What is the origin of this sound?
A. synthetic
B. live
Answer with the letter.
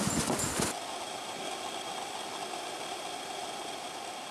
B